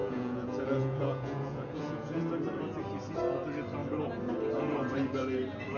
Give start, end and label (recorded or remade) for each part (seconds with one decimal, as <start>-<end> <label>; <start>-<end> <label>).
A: 0.0-2.2 remade; 2.2-5.8 recorded